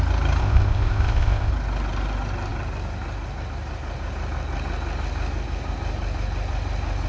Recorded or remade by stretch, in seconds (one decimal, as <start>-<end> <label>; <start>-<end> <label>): 0.0-0.4 recorded; 0.4-1.5 remade; 1.5-7.1 recorded